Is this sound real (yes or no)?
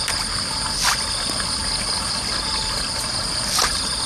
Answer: yes